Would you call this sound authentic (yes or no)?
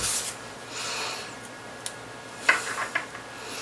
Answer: yes